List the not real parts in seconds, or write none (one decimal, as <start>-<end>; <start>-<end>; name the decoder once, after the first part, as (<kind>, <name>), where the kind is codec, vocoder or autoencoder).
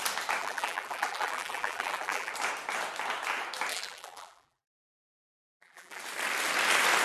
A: 0.4-2.3 (vocoder, BigVGAN v2); 3.7-6.0